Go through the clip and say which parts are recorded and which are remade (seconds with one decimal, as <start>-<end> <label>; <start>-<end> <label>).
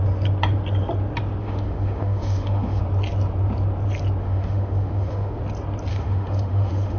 0.0-1.4 recorded; 1.4-2.8 remade; 2.8-4.2 recorded; 4.2-5.4 remade; 5.4-5.9 recorded; 5.9-7.0 remade